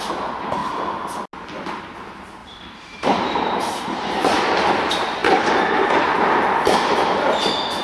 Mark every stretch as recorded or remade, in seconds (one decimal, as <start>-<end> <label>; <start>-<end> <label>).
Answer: 0.0-2.4 recorded; 2.4-4.4 remade; 4.4-5.2 recorded; 5.2-7.2 remade; 7.2-7.8 recorded